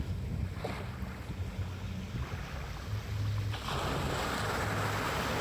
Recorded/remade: recorded